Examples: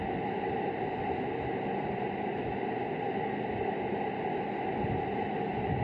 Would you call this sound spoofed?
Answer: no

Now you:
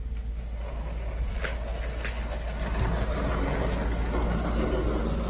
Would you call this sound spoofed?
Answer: no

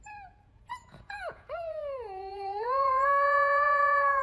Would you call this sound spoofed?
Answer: yes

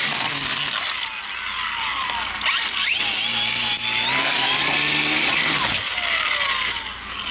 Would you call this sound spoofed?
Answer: no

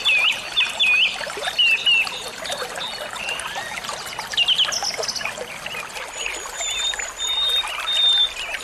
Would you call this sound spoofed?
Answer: no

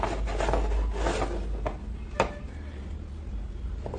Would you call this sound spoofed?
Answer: no